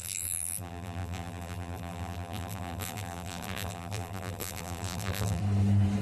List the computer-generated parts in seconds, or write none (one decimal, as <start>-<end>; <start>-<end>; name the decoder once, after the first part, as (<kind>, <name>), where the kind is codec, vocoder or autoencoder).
0.0-5.4 (vocoder, BigVGAN v2)